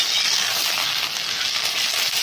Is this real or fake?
real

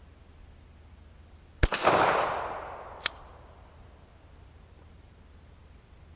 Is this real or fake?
real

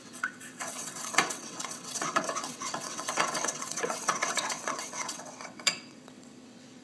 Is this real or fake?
fake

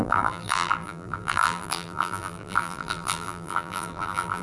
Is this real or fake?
fake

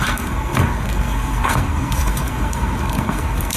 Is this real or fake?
fake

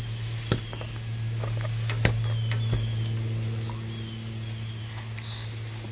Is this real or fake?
real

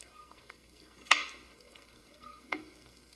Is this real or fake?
fake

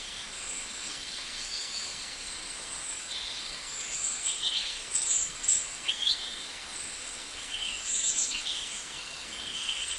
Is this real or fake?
fake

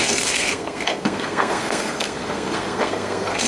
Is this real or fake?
fake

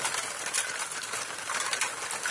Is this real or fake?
real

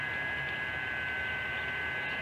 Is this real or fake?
real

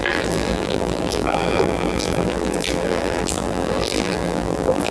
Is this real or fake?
fake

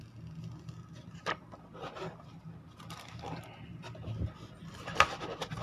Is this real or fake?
real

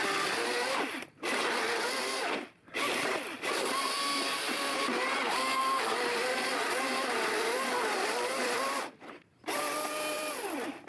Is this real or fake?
fake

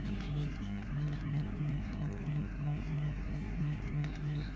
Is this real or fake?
fake